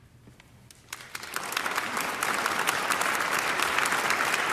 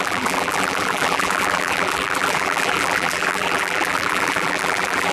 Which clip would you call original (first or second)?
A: first